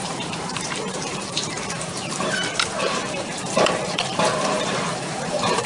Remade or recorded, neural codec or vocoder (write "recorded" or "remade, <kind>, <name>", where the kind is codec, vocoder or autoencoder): remade, vocoder, BigVGAN v2